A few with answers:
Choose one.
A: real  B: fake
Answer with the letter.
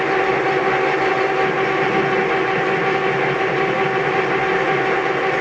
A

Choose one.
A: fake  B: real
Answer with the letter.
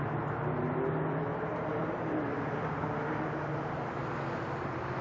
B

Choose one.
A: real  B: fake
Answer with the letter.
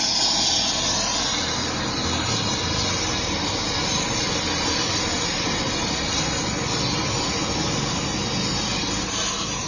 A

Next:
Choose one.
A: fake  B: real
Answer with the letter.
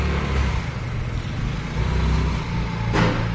B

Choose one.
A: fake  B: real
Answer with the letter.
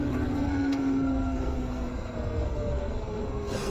A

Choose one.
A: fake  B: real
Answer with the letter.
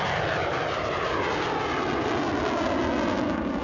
B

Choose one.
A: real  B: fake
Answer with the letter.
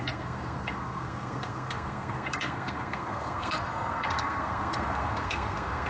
B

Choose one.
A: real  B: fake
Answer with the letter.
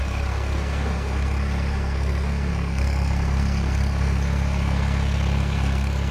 B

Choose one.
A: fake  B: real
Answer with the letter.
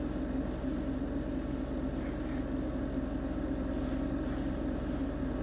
B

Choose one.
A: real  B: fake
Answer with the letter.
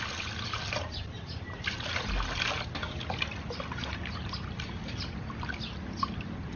A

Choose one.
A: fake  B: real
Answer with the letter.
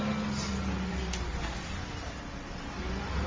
B